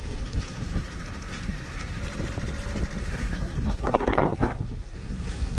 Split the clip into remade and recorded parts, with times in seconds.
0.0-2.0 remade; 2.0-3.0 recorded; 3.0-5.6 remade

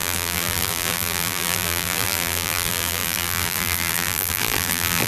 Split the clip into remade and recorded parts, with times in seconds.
0.0-5.1 remade

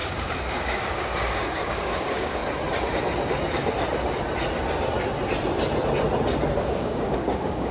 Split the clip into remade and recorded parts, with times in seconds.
0.0-2.4 remade; 2.4-6.6 recorded; 6.6-7.7 remade

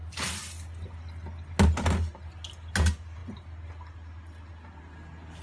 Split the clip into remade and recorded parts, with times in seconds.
0.0-5.4 recorded

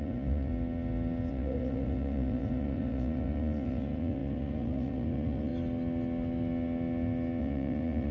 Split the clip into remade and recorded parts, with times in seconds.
0.0-0.5 remade; 0.5-1.3 recorded; 1.3-5.5 remade; 5.5-7.4 recorded; 7.4-8.1 remade

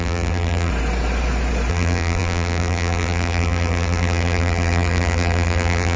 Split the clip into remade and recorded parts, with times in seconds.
0.0-0.7 remade; 0.7-1.7 recorded; 1.7-6.0 remade